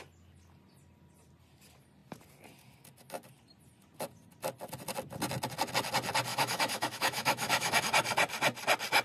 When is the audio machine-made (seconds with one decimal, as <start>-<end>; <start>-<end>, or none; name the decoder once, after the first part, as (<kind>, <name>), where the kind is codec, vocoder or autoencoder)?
6.3-7.8 (autoencoder, DAC-VAE)